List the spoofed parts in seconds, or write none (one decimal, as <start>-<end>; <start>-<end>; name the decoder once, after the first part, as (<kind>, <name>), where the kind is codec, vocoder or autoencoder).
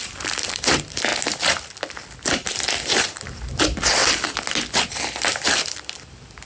0.0-1.1 (vocoder, BigVGAN v2); 2.5-4.0; 4.9-6.5